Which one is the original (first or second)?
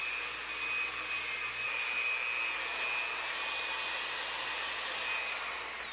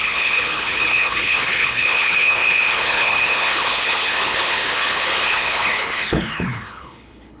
first